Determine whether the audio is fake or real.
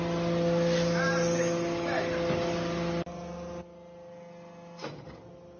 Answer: real